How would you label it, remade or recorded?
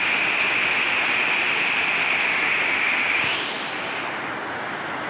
recorded